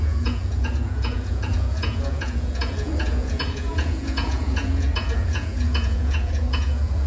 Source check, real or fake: fake